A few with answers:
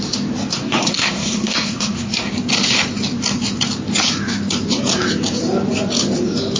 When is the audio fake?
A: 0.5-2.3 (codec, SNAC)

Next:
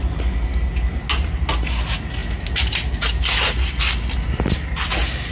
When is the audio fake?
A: none